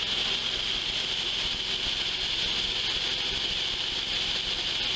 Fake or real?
real